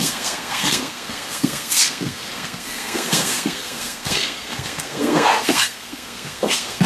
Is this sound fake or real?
fake